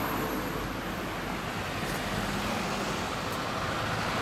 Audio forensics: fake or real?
real